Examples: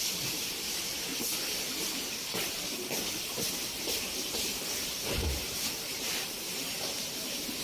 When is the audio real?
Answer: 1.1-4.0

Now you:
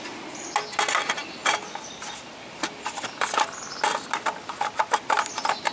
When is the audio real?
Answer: 0.0-5.7

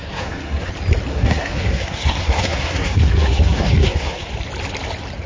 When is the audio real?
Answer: 0.7-1.1; 4.3-5.3

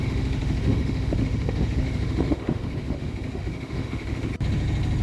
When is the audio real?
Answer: 4.3-5.0

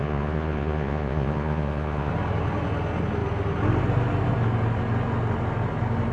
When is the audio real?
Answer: 2.1-6.1